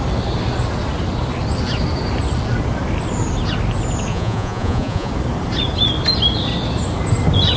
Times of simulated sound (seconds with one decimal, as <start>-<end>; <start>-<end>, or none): 4.1-5.1